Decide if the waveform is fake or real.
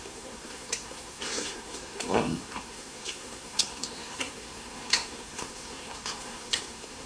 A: fake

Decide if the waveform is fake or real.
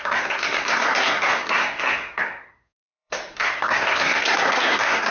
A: fake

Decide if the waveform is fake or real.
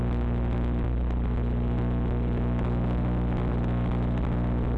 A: real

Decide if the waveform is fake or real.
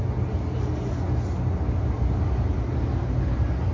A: real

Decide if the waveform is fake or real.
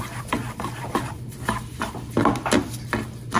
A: real